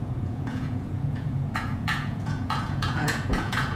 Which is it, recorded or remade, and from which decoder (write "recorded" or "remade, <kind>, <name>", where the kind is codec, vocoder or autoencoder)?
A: remade, vocoder, Vocos